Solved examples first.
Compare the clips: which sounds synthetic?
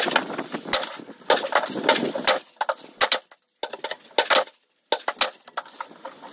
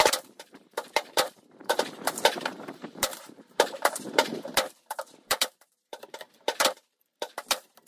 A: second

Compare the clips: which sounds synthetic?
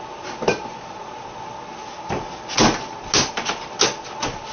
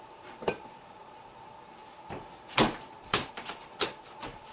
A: second